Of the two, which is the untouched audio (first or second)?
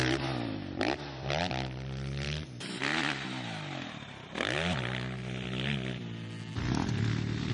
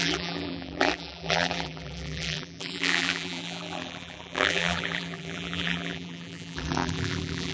first